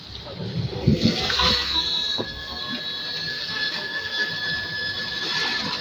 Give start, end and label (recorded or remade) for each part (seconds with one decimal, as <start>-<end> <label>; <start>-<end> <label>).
0.0-0.5 recorded; 0.5-2.6 remade; 2.6-3.3 recorded; 3.3-4.3 remade; 4.3-5.8 recorded